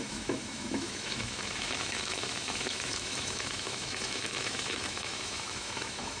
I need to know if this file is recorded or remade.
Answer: remade